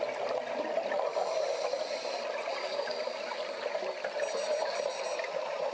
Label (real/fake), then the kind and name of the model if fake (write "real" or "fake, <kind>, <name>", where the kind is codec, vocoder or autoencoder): real